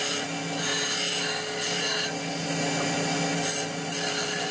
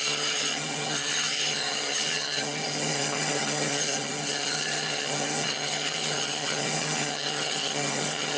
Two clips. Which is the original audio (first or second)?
first